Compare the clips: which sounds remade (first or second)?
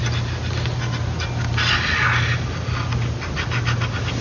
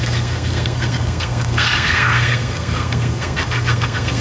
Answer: second